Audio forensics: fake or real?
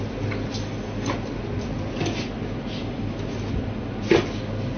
real